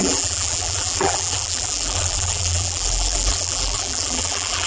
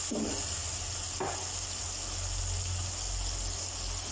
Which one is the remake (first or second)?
first